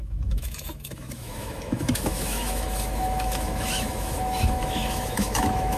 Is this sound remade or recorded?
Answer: remade